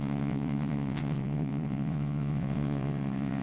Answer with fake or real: fake